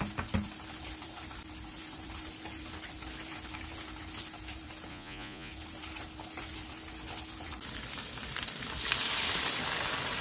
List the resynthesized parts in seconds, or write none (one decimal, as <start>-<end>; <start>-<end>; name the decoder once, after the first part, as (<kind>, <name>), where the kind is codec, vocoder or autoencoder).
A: 4.9-5.5 (vocoder, Vocos)